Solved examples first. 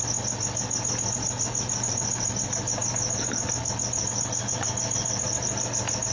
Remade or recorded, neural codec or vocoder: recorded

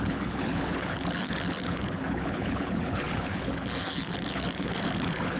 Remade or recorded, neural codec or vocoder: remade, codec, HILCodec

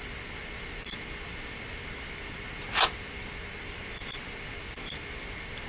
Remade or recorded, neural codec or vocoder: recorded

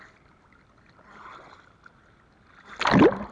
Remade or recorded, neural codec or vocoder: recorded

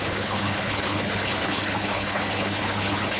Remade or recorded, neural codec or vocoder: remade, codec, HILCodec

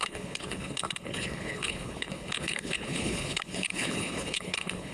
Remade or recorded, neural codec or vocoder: remade, codec, HILCodec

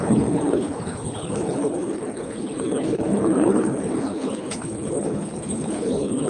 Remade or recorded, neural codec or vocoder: remade, codec, HILCodec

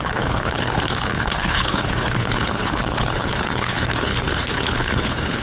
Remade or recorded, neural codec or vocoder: remade, codec, HILCodec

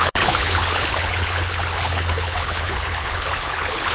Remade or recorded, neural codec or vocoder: remade, codec, HILCodec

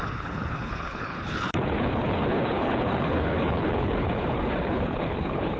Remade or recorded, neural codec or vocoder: remade, codec, HILCodec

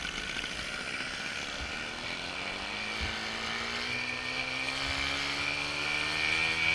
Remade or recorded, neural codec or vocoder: recorded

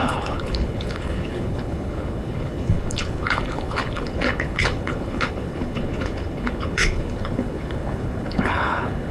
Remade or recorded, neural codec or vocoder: remade, codec, HILCodec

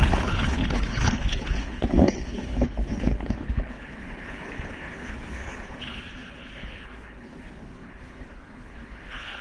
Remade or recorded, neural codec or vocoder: remade, codec, HILCodec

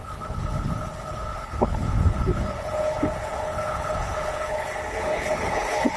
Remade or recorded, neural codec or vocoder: remade, codec, HILCodec